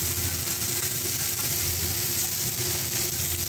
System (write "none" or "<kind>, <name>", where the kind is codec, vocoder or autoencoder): none